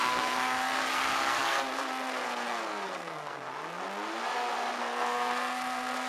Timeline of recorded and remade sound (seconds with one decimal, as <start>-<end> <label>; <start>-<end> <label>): 0.0-3.5 remade; 3.5-4.8 recorded; 4.8-6.1 remade